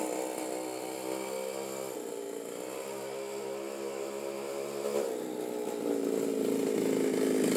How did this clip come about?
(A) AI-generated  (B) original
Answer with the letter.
B